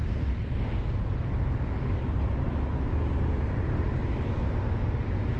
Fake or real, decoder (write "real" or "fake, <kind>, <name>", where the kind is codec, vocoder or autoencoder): real